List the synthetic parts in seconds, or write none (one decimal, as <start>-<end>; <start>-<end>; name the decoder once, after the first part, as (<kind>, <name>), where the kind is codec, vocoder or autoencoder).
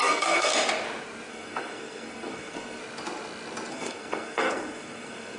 0.0-0.5 (codec, SNAC); 1.3-2.8; 3.7-5.4